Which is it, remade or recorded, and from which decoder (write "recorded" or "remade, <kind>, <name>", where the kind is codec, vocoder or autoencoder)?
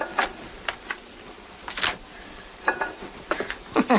recorded